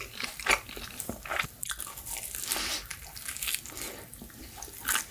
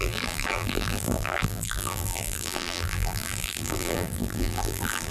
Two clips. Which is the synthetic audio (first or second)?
second